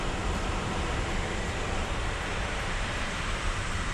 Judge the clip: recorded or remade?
remade